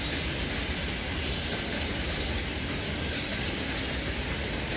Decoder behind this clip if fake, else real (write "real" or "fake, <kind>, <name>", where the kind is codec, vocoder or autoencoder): real